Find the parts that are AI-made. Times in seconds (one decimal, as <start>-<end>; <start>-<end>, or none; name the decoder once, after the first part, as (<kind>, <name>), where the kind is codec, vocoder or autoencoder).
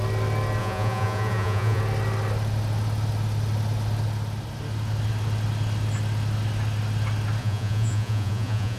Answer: 0.6-1.8 (vocoder, Vocos); 7.4-8.8